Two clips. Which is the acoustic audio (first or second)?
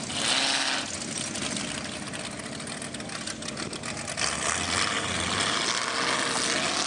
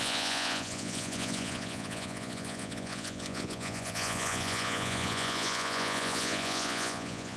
first